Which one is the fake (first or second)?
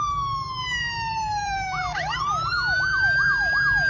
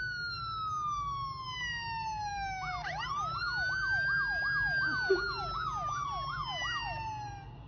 first